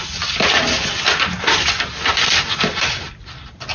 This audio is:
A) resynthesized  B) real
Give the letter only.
B